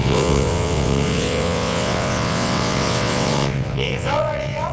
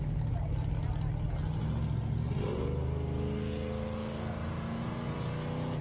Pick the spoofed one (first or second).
first